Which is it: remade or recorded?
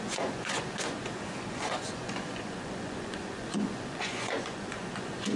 remade